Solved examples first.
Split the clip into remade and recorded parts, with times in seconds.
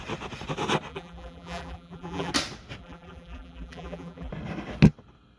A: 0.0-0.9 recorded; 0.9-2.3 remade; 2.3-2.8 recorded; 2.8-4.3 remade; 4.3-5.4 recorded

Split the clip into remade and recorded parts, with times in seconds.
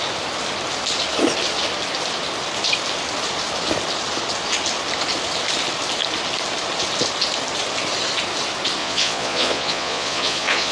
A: 0.0-8.8 recorded; 8.8-10.7 remade